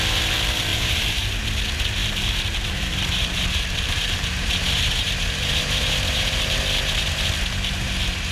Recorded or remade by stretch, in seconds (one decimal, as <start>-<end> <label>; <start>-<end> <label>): 0.0-0.7 recorded; 0.7-1.4 remade; 1.4-2.0 recorded; 2.0-6.6 remade; 6.6-8.3 recorded

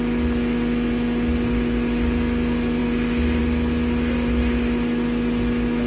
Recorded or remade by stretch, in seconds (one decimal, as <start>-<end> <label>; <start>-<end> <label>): 0.0-5.9 recorded

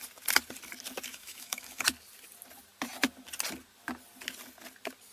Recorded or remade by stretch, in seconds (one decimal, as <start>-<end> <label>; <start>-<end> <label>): 0.0-1.1 recorded; 1.1-1.8 remade; 1.8-5.1 recorded

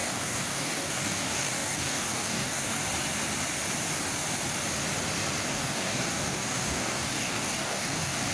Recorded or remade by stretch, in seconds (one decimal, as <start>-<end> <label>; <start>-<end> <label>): 0.0-2.8 remade; 2.8-5.5 recorded; 5.5-8.3 remade